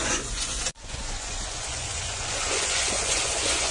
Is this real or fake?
fake